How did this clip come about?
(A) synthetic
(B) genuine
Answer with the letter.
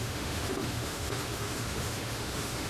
A